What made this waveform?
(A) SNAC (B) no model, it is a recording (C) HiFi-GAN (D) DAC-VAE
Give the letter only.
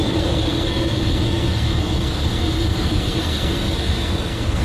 A